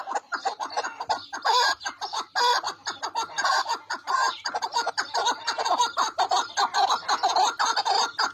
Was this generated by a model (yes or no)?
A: no